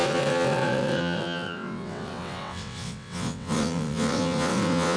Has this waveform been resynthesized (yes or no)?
yes